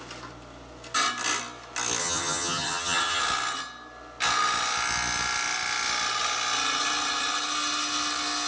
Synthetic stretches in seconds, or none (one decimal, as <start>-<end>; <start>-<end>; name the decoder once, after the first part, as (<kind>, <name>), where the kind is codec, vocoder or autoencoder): 2.0-3.2 (vocoder, HiFi-GAN)